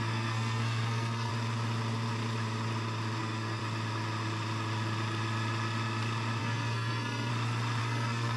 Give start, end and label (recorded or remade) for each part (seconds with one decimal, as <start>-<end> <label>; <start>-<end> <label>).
0.0-1.3 remade; 1.3-3.2 recorded; 3.2-3.6 remade; 3.6-6.4 recorded; 6.4-7.3 remade; 7.3-7.8 recorded; 7.8-8.4 remade